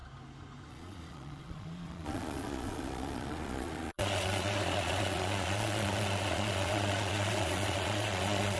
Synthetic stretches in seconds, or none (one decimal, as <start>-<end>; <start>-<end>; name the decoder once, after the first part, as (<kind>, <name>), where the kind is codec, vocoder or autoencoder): 0.7-8.6 (vocoder, Vocos)

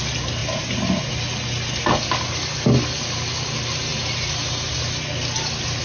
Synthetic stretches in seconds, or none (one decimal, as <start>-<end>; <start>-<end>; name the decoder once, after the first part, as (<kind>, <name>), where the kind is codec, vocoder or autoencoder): none

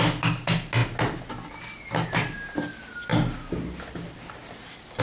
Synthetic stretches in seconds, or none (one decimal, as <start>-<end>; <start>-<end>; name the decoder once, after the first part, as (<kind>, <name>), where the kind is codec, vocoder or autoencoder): none

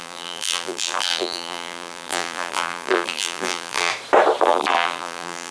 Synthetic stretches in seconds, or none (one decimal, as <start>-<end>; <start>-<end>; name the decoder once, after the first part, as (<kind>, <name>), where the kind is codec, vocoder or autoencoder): 0.0-3.9 (vocoder, BigVGAN v2); 4.4-5.5

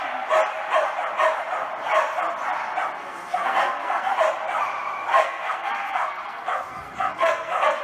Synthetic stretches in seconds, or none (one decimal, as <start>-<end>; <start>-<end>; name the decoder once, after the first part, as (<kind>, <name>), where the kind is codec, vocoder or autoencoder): 3.0-4.1 (codec, SNAC); 5.1-7.8